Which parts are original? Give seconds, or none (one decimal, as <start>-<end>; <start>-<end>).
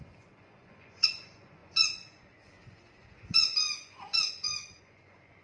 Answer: none